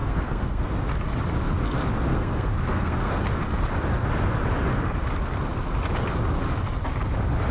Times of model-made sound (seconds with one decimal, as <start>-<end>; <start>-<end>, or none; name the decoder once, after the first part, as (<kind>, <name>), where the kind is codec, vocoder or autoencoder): 0.0-0.7 (codec, SNAC); 2.1-3.1